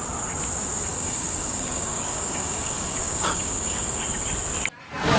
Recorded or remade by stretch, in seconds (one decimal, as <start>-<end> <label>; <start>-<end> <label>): 0.0-0.9 recorded; 0.9-4.0 remade; 4.0-5.2 recorded

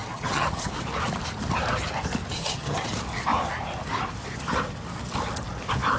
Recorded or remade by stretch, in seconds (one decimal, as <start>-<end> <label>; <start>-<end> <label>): 0.0-0.7 remade; 0.7-2.4 recorded; 2.4-2.9 remade; 2.9-6.0 recorded

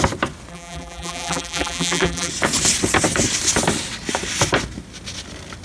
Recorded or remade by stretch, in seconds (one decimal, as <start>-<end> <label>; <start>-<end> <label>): 0.0-0.5 recorded; 0.5-2.3 remade; 2.3-5.6 recorded

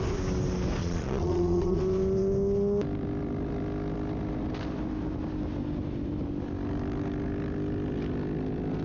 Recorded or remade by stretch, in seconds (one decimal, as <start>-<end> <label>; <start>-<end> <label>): 0.0-0.8 recorded; 0.8-1.8 remade; 1.8-8.8 recorded

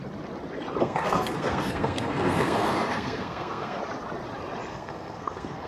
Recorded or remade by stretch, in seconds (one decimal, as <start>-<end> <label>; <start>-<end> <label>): 0.0-0.8 recorded; 0.8-3.8 remade; 3.8-4.7 recorded; 4.7-5.7 remade